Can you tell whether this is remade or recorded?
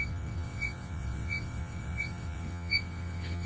remade